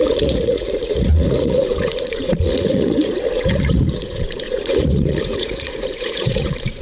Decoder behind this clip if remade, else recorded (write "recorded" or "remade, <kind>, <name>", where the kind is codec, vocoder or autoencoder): remade, vocoder, Vocos